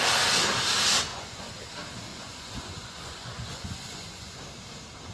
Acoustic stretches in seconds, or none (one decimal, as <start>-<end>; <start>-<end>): 0.0-1.1; 1.6-2.1; 4.4-5.1